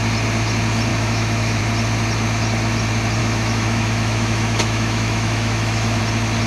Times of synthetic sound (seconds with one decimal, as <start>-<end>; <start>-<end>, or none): 0.9-1.6; 3.2-6.0